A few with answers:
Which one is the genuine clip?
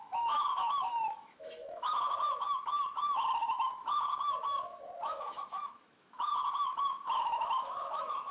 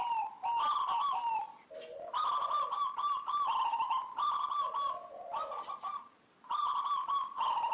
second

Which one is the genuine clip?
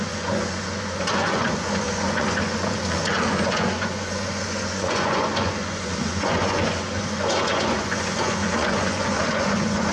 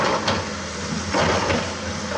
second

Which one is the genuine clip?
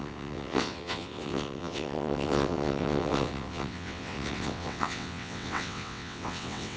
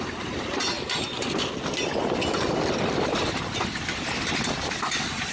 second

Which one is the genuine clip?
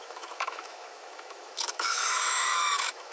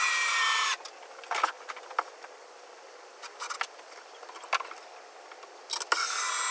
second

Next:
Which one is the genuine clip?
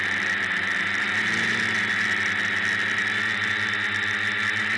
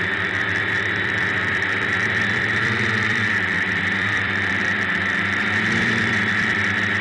first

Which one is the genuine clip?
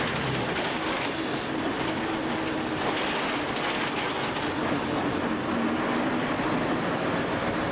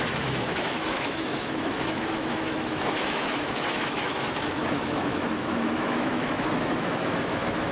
first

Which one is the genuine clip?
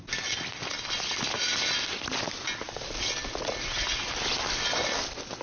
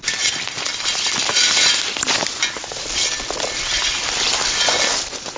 first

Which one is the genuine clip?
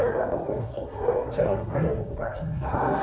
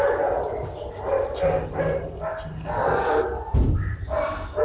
second